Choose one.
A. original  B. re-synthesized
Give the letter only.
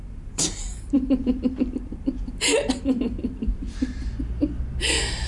B